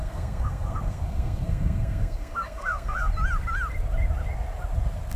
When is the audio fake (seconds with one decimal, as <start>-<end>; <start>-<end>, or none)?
0.0-3.1